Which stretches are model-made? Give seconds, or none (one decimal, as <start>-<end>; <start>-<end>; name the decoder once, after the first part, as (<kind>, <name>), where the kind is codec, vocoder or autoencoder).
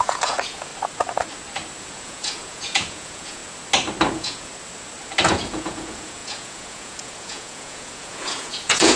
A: 0.0-0.7 (vocoder, Vocos); 1.8-3.4; 4.1-4.5; 5.3-9.0